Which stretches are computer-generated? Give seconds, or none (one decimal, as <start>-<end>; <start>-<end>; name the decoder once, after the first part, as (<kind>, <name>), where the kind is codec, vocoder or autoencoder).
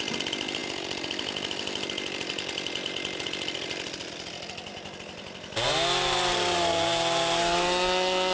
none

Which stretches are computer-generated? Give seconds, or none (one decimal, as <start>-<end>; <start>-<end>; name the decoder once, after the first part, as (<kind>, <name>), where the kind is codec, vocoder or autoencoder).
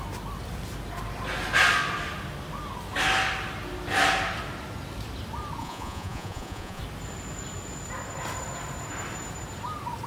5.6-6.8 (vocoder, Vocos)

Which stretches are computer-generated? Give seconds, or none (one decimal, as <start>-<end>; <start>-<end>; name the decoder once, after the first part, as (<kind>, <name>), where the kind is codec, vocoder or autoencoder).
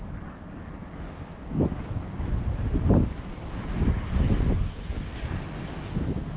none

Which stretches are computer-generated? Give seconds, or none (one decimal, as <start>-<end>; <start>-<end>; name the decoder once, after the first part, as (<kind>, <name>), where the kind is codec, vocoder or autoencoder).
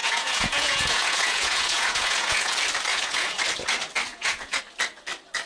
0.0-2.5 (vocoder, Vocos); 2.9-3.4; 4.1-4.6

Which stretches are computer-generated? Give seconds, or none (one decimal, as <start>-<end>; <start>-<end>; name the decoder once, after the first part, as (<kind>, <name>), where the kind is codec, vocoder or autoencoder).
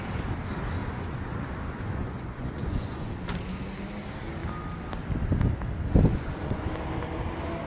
0.8-3.1 (vocoder, Vocos); 6.1-6.6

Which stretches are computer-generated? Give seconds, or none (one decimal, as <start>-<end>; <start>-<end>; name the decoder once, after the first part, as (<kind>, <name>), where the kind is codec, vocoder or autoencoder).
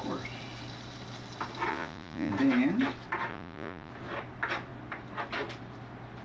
1.7-2.3 (vocoder, Vocos); 3.3-3.9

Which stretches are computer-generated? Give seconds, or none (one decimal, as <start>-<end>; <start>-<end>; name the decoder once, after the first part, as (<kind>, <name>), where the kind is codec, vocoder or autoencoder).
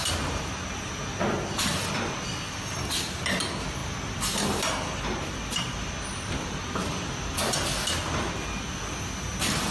none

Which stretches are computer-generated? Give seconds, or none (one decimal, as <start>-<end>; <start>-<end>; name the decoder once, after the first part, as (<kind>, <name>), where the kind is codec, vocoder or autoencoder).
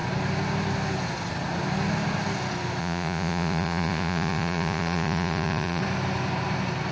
2.8-5.8 (vocoder, Vocos)